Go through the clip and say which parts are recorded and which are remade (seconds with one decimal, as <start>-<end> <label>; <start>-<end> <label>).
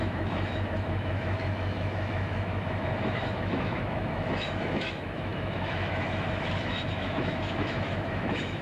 0.0-8.6 remade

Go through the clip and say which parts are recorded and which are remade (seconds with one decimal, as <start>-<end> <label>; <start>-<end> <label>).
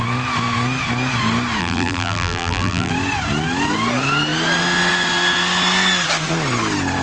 0.0-1.6 recorded; 1.6-2.9 remade; 2.9-7.0 recorded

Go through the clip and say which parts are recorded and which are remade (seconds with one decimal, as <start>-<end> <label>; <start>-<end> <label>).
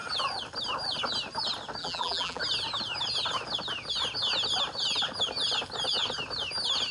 0.0-1.8 recorded; 1.8-2.4 remade; 2.4-6.9 recorded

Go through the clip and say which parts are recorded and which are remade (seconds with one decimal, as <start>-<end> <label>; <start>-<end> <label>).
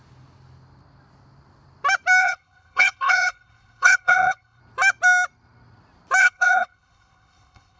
0.0-2.2 recorded; 2.2-4.6 remade; 4.6-6.2 recorded; 6.2-7.8 remade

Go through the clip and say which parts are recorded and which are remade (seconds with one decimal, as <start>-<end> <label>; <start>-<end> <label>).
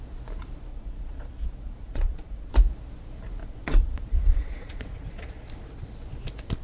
0.0-0.7 recorded; 0.7-2.5 remade; 2.5-3.4 recorded; 3.4-5.3 remade; 5.3-6.6 recorded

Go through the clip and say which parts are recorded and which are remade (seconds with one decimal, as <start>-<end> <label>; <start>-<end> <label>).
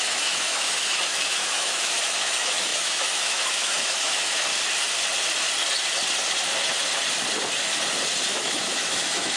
0.0-4.5 remade; 4.5-8.3 recorded; 8.3-9.4 remade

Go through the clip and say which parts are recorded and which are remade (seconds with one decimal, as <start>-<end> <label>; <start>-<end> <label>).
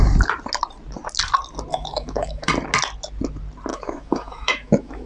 0.0-1.7 recorded; 1.7-2.5 remade; 2.5-3.7 recorded; 3.7-5.1 remade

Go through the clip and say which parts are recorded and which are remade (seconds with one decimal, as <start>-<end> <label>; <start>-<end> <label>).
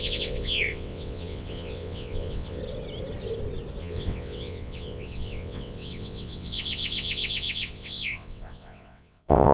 0.0-2.6 remade; 2.6-3.8 recorded; 3.8-9.5 remade